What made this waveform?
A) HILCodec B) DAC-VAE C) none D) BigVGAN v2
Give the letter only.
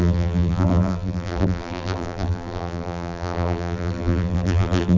D